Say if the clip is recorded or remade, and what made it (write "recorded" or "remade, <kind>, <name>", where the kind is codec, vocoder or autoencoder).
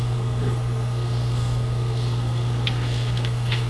remade, codec, SNAC